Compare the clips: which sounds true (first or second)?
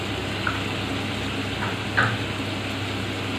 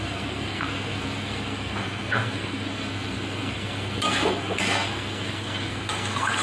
first